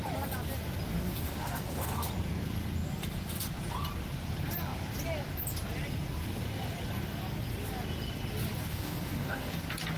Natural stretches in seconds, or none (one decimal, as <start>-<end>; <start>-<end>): 0.0-1.0; 2.1-8.7; 9.6-10.0